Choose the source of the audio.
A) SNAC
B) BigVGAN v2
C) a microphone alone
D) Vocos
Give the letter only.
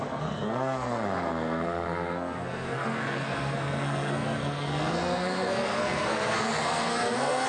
A